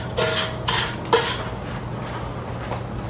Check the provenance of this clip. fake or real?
real